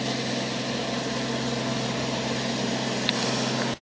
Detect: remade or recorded recorded